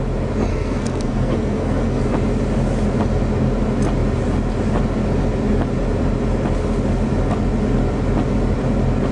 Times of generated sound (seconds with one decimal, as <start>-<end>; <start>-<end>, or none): 0.5-2.0